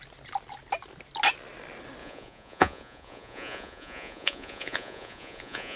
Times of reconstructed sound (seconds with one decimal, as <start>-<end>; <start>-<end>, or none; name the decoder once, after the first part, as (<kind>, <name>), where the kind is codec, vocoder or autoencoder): 2.0-5.8 (vocoder, Vocos)